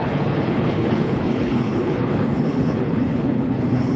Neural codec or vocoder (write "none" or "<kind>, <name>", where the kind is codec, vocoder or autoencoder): codec, HILCodec